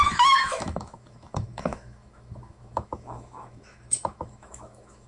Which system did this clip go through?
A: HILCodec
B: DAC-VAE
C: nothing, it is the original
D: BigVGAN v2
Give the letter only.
B